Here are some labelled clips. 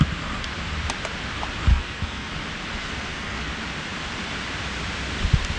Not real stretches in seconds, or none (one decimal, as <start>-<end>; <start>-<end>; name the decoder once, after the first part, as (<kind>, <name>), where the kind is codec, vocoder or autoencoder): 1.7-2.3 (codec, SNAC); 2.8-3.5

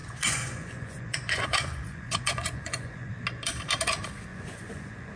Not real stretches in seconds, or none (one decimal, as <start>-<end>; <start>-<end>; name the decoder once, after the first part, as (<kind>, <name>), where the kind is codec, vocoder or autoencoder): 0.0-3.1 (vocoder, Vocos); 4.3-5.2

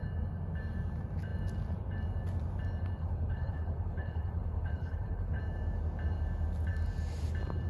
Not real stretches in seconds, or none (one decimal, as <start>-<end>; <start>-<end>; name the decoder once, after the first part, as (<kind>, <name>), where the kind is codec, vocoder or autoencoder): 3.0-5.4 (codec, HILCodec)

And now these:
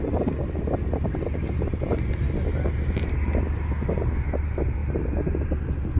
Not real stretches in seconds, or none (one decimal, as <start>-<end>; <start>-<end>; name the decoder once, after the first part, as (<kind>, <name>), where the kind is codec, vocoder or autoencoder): none

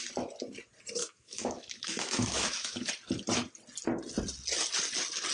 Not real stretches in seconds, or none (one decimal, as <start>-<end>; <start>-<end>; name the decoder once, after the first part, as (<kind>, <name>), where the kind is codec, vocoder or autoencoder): 1.0-2.9 (autoencoder, DAC-VAE)

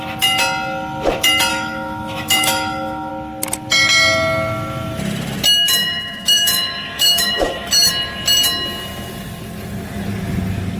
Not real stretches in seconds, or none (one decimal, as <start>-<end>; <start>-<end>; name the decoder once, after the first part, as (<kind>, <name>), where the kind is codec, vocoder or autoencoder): 1.5-3.1 (autoencoder, DAC-VAE); 5.8-7.9